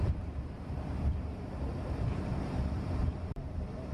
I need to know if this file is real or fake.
fake